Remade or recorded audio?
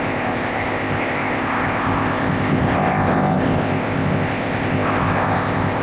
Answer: remade